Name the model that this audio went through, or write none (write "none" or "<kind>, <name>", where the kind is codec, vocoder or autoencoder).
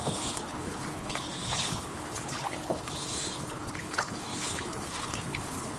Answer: codec, HILCodec